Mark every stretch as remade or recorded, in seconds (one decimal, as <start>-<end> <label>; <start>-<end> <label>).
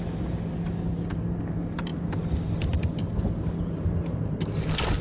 0.0-5.0 recorded